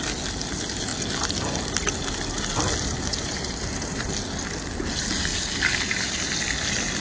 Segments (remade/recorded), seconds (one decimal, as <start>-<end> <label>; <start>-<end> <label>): 0.0-3.1 recorded; 3.1-4.0 remade; 4.0-7.0 recorded

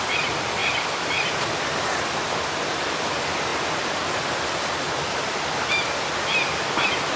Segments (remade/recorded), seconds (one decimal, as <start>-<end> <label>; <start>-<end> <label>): 0.0-0.6 recorded; 0.6-1.4 remade; 1.4-3.5 recorded; 3.5-4.4 remade; 4.4-7.2 recorded

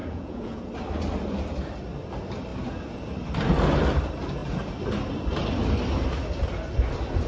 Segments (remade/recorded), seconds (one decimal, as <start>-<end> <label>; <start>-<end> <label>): 0.0-0.7 remade; 0.7-7.3 recorded

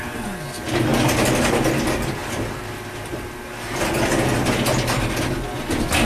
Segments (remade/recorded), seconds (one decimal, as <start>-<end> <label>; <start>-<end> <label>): 0.0-6.1 recorded

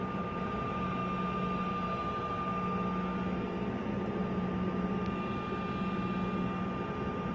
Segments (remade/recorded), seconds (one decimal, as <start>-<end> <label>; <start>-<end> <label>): 0.0-1.0 remade; 1.0-3.7 recorded; 3.7-4.2 remade; 4.2-7.3 recorded

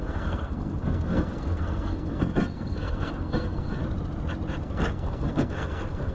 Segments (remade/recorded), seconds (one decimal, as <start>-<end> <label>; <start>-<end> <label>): 0.0-3.8 remade; 3.8-4.6 recorded; 4.6-6.1 remade

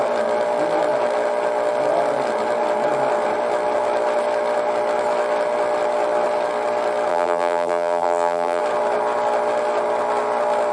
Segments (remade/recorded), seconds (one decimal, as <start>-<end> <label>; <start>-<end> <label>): 0.0-7.1 recorded; 7.1-8.6 remade; 8.6-10.7 recorded

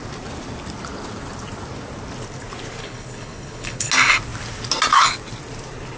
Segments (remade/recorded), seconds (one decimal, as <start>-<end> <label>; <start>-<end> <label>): 0.0-2.8 recorded; 2.8-3.9 remade; 3.9-6.0 recorded